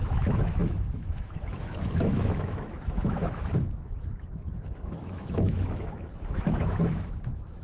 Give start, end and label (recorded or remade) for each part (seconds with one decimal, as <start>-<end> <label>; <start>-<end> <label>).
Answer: 0.0-7.6 remade